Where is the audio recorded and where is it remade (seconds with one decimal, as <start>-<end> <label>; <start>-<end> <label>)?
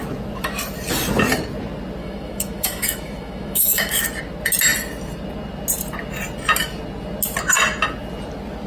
0.0-2.0 recorded; 2.0-4.0 remade; 4.0-8.7 recorded